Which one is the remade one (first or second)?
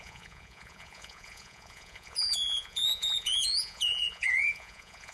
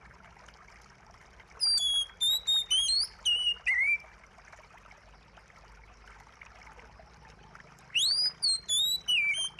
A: first